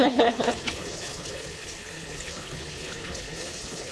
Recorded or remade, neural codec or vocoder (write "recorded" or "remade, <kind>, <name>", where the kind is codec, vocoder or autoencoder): remade, codec, HILCodec